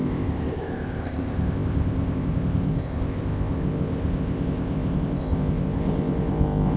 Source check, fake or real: fake